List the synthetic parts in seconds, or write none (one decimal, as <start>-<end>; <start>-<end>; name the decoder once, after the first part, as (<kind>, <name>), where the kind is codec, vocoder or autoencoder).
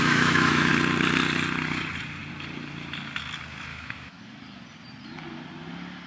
0.0-0.7 (autoencoder, DAC-VAE); 3.7-4.2